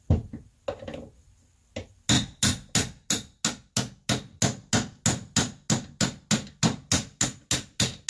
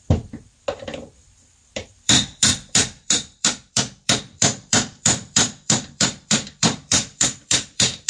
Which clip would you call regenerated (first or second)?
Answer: second